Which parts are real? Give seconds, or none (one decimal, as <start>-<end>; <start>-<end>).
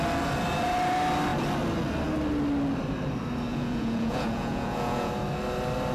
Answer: 0.0-3.5; 5.1-5.9